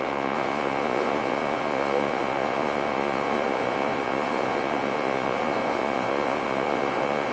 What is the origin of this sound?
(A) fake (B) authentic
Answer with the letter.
A